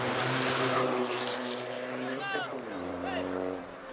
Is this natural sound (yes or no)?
no